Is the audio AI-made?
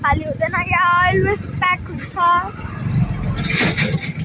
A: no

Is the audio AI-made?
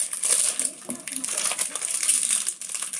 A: no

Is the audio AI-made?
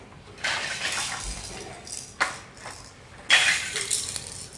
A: no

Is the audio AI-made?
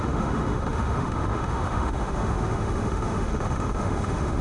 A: yes